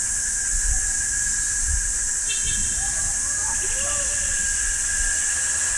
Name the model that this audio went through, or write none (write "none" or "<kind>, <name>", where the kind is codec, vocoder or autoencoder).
none